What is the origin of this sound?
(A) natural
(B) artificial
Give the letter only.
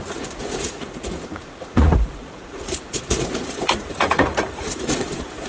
B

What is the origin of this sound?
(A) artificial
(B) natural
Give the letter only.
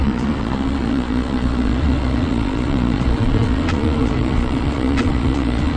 A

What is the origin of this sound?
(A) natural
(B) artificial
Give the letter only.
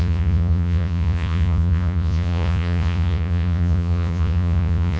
B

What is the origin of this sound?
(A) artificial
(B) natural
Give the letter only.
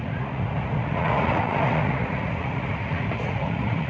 A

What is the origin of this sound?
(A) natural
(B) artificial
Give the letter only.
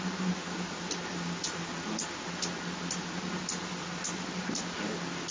A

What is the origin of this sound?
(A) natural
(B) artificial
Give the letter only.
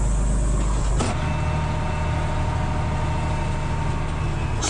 A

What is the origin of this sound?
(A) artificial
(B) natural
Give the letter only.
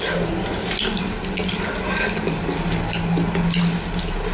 B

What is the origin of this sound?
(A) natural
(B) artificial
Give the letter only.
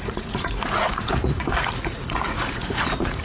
B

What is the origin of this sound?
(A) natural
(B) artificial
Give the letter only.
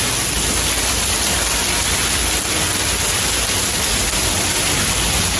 A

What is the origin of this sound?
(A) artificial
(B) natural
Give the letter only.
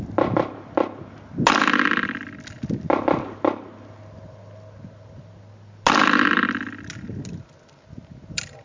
B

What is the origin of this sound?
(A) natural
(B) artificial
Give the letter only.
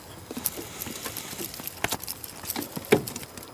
A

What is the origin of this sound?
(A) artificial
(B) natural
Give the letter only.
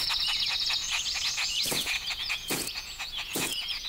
A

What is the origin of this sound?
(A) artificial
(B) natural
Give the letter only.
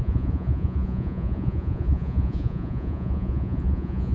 A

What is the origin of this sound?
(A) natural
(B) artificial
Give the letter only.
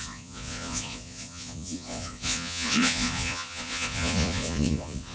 B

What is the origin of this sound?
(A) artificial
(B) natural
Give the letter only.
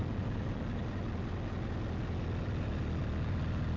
B